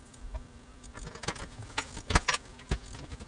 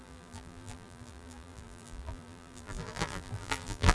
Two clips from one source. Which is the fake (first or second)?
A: second